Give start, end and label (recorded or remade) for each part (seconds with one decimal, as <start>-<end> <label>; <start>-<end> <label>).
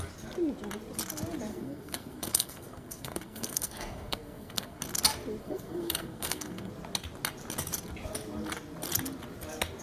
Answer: 0.0-1.5 recorded; 1.5-4.8 remade; 4.8-5.4 recorded; 5.4-6.7 remade; 6.7-9.8 recorded